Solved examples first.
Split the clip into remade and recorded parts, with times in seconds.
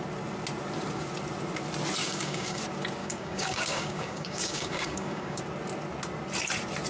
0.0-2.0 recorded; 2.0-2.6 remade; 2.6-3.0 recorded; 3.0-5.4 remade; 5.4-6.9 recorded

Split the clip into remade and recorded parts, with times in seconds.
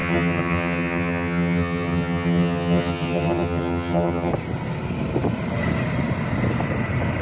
0.0-4.3 remade; 4.3-7.2 recorded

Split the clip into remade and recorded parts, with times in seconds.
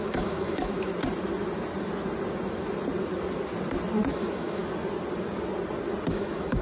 0.0-0.9 remade; 0.9-4.1 recorded; 4.1-4.6 remade; 4.6-6.1 recorded; 6.1-6.6 remade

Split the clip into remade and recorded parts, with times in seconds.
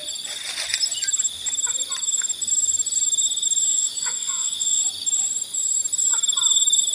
0.0-3.7 recorded; 3.7-4.8 remade; 4.8-6.9 recorded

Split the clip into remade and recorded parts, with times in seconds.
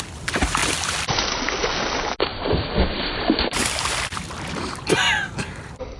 0.0-0.6 recorded; 0.6-1.4 remade; 1.4-2.3 recorded; 2.3-4.3 remade; 4.3-6.0 recorded